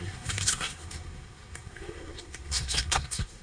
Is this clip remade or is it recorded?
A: remade